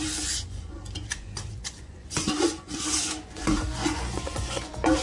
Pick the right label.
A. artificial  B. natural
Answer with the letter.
A